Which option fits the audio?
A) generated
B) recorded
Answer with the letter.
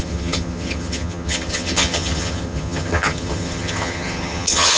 A